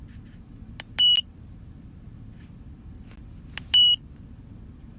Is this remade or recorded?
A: recorded